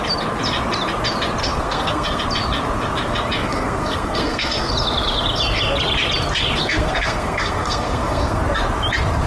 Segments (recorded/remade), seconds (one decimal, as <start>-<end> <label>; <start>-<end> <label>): 0.0-1.4 recorded; 1.4-2.2 remade; 2.2-3.4 recorded; 3.4-4.7 remade; 4.7-6.6 recorded; 6.6-8.4 remade; 8.4-9.3 recorded